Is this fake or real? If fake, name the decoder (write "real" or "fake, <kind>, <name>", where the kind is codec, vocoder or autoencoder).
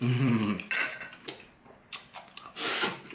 real